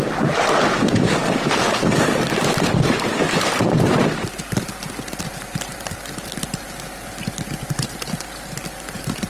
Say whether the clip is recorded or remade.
remade